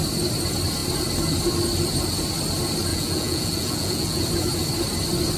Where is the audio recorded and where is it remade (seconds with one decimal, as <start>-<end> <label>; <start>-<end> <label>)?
0.0-2.9 recorded; 2.9-4.3 remade; 4.3-5.4 recorded